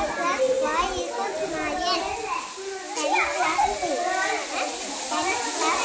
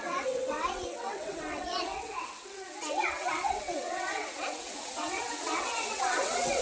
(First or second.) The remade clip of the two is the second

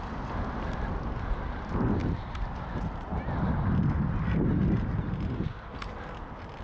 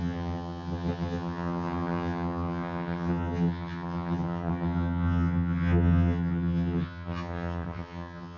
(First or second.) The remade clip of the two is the second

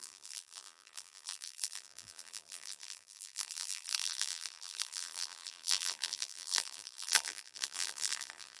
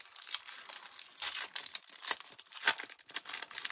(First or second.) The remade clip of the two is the first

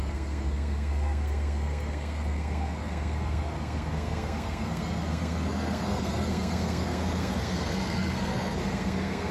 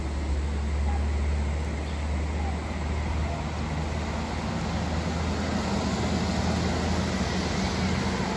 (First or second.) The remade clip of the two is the first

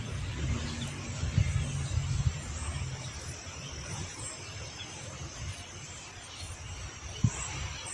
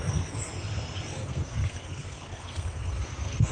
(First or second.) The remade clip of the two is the second